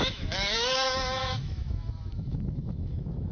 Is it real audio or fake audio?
fake